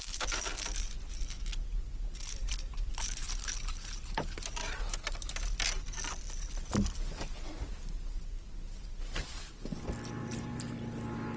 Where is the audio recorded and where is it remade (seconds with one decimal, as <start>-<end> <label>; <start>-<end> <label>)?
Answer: 0.0-2.4 recorded; 2.4-3.5 remade; 3.5-10.2 recorded; 10.2-10.8 remade; 10.8-11.4 recorded